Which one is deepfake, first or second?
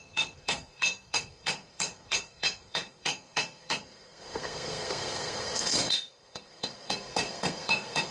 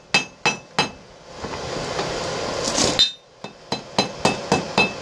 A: first